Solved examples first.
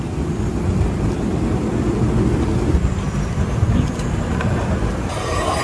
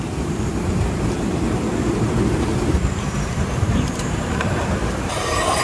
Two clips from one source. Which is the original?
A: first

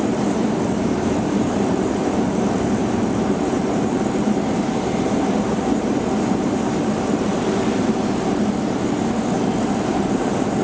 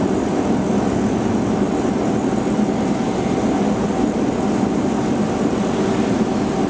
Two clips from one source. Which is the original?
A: second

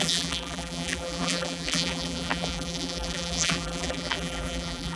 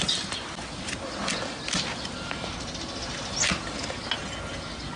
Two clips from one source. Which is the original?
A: second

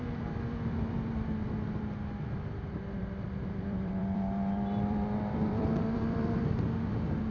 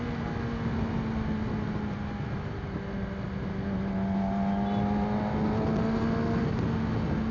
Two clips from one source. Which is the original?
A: second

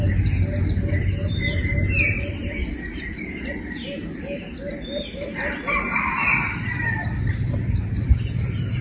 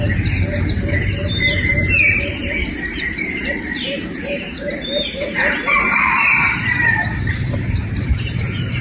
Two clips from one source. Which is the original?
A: first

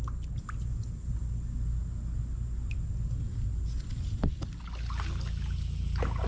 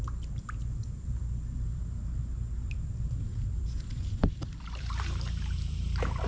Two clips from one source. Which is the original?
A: first